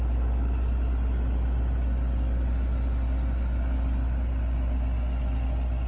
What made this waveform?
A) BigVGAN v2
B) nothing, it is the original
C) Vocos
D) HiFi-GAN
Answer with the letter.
B